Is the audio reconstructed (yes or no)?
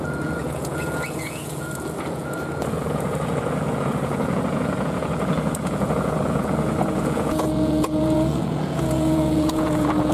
yes